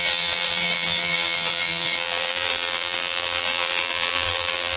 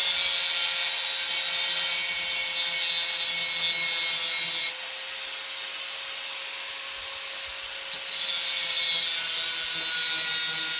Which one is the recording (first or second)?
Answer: second